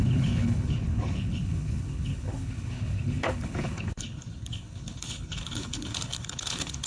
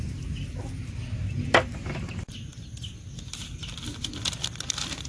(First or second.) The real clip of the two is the second